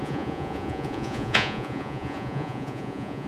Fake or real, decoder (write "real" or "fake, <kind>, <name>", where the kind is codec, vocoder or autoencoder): fake, vocoder, Vocos